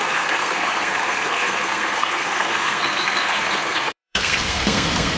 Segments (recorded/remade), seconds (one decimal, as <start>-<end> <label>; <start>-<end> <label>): 0.0-5.2 remade